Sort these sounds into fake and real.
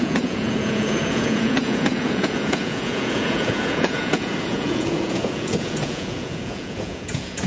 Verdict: fake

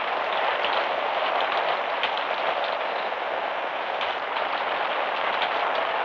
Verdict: real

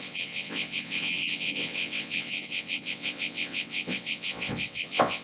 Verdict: fake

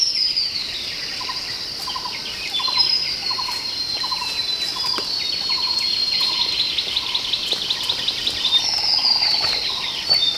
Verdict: real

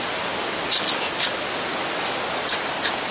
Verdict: real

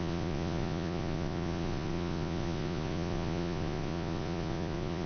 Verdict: fake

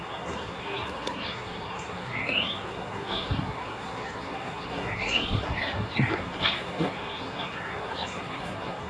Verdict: fake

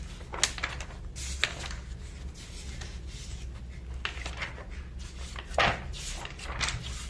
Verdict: real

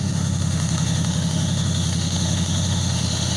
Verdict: fake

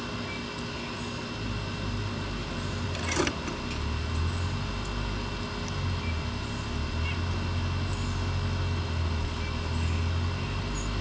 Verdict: real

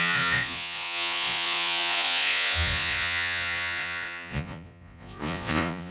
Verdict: fake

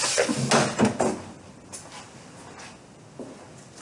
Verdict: real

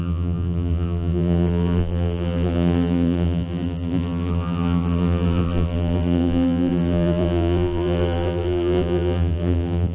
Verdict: fake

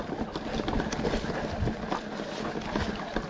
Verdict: real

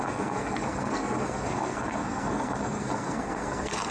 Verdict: fake